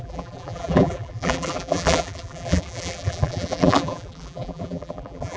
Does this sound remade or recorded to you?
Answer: remade